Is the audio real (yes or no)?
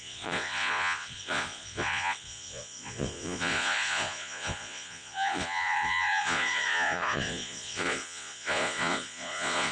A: no